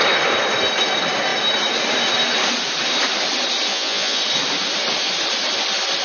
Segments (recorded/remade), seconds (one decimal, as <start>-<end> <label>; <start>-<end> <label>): 0.0-3.7 recorded; 3.7-4.2 remade; 4.2-6.0 recorded